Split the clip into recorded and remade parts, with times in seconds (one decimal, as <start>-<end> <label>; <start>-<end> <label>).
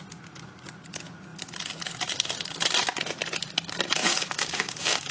0.0-4.0 recorded; 4.0-5.1 remade